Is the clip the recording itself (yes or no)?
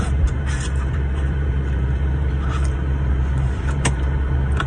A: no